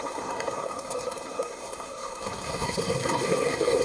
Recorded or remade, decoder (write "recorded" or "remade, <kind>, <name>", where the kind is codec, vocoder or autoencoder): remade, codec, SNAC